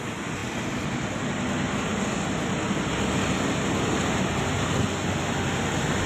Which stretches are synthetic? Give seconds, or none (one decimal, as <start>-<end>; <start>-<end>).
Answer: none